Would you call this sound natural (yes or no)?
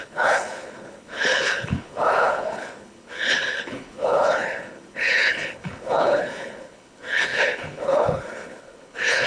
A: no